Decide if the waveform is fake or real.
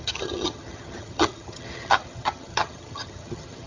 fake